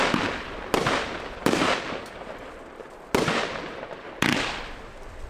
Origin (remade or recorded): recorded